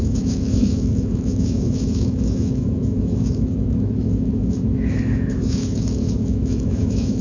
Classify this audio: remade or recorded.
remade